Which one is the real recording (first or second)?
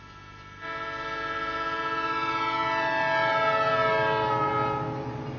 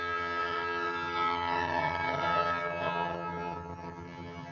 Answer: first